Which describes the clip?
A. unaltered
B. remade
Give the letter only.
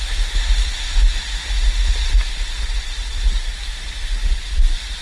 A